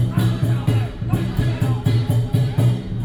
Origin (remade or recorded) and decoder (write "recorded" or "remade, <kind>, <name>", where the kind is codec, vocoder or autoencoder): remade, vocoder, BigVGAN v2